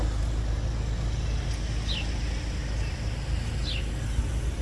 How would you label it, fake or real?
real